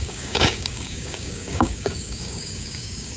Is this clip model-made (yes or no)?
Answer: yes